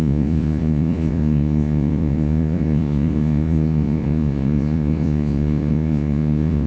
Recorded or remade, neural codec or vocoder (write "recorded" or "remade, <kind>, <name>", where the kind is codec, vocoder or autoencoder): remade, vocoder, Vocos